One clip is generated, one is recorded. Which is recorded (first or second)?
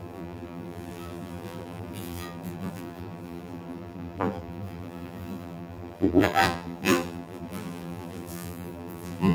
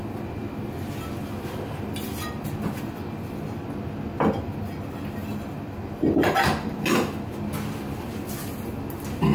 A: second